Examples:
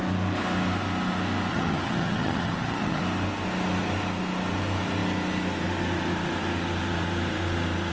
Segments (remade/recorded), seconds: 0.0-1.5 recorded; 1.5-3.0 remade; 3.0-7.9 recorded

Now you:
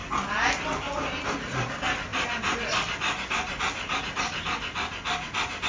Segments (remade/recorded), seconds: 0.0-5.7 recorded

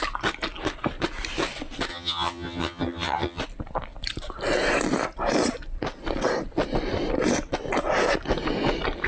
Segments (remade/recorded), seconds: 0.0-1.9 recorded; 1.9-3.4 remade; 3.4-9.1 recorded

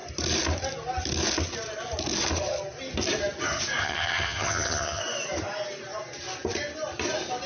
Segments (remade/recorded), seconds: 0.0-3.8 recorded; 3.8-5.0 remade; 5.0-7.5 recorded

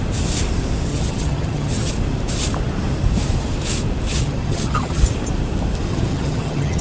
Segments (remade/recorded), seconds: 0.0-0.9 recorded; 0.9-1.9 remade; 1.9-4.1 recorded; 4.1-5.0 remade; 5.0-5.9 recorded; 5.9-6.8 remade